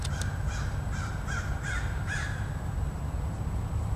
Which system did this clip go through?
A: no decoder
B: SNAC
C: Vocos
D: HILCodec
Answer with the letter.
A